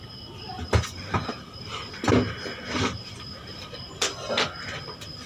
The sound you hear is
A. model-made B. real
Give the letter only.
B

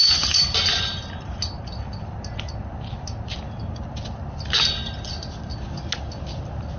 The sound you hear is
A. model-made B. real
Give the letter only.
B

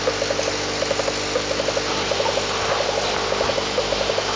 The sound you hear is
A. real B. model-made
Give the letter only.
A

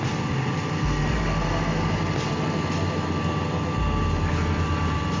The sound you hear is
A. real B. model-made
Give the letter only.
A